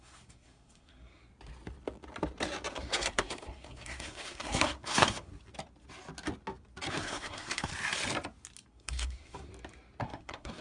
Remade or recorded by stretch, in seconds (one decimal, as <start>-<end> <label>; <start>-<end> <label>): 0.0-1.3 remade; 1.3-2.7 recorded; 2.7-5.3 remade; 5.3-6.9 recorded; 6.9-7.7 remade; 7.7-8.7 recorded; 8.7-9.5 remade; 9.5-10.0 recorded; 10.0-10.6 remade